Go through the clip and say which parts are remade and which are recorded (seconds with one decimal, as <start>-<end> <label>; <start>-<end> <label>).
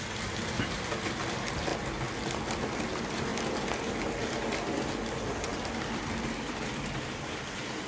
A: 0.0-1.7 remade; 1.7-2.7 recorded; 2.7-3.3 remade; 3.3-5.1 recorded; 5.1-7.9 remade